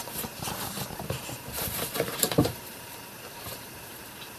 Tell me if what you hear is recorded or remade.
remade